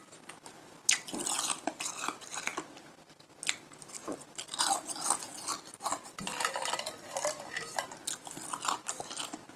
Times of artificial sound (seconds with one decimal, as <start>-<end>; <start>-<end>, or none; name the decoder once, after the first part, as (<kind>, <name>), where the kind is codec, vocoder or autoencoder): none